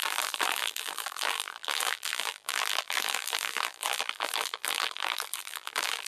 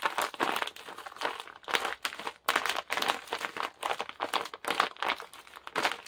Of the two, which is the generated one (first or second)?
first